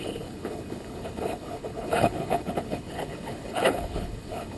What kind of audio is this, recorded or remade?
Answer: remade